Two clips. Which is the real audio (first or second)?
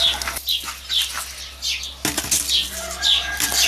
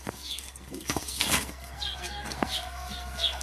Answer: first